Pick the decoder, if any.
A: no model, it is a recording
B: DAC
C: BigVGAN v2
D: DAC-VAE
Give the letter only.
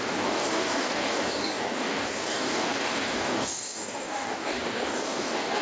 B